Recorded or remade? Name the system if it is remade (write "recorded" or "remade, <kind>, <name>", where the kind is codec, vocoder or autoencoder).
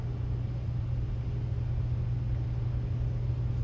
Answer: recorded